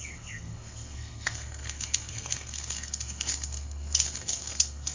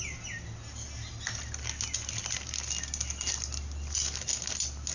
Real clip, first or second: second